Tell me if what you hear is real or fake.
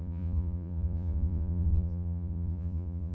fake